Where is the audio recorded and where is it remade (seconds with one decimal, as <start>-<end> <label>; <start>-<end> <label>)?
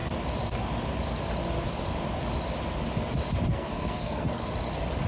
0.0-3.5 recorded; 3.5-4.5 remade; 4.5-5.1 recorded